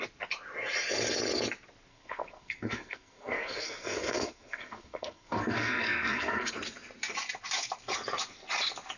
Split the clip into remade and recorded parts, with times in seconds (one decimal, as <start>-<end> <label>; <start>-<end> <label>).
0.0-1.9 recorded; 1.9-6.5 remade; 6.5-9.0 recorded